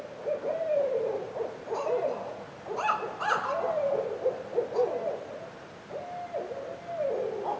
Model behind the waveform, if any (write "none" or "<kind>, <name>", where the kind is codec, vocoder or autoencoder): none